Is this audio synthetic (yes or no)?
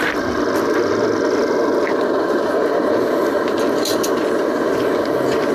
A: no